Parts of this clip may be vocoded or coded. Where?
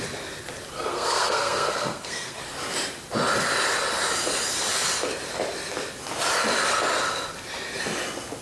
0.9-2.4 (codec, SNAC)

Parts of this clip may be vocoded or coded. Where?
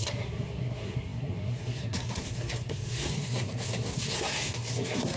0.0-5.2 (codec, SNAC)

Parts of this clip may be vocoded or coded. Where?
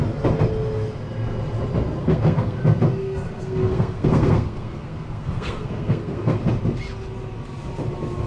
2.0-2.6 (codec, SNAC); 3.0-6.5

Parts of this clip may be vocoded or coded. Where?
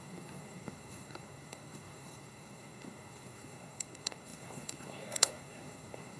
0.0-6.2 (codec, SNAC)